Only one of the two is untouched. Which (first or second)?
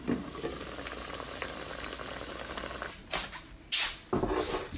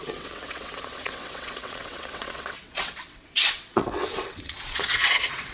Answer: first